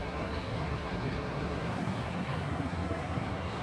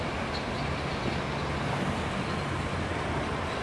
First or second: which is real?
second